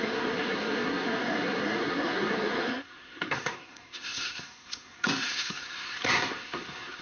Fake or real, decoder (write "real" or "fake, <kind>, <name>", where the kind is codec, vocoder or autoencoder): fake, codec, SNAC